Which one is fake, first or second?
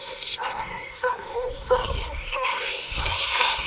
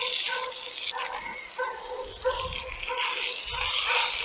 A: first